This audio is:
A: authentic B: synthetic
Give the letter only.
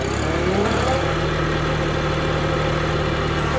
A